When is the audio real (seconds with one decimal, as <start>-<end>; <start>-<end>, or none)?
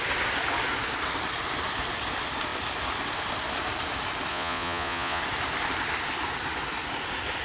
0.0-4.3; 5.2-7.4